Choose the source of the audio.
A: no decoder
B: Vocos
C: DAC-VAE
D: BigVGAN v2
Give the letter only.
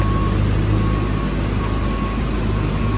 A